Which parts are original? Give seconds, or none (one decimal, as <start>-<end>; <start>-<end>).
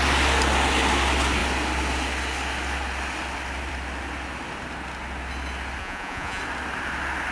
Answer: 0.0-5.8; 6.4-7.3